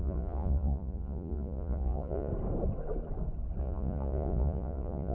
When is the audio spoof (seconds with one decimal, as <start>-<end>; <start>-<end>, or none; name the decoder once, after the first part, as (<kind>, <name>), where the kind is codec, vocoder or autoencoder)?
0.0-2.3 (vocoder, Vocos); 3.6-5.1